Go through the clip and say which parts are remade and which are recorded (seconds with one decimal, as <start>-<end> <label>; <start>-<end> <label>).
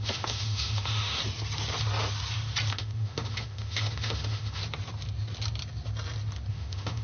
0.0-1.2 remade; 1.2-2.7 recorded; 2.7-4.6 remade; 4.6-6.5 recorded; 6.5-7.0 remade